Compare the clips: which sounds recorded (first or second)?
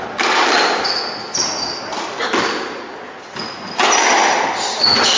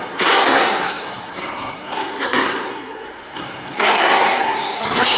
first